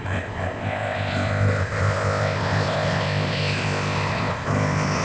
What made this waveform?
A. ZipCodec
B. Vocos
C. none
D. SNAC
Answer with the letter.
A